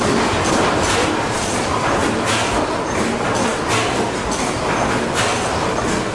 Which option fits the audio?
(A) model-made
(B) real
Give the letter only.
B